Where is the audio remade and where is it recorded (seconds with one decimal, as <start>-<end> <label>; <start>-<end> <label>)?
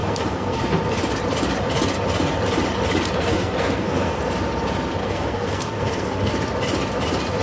0.0-0.6 remade; 0.6-3.2 recorded; 3.2-4.2 remade; 4.2-5.0 recorded; 5.0-6.3 remade; 6.3-7.4 recorded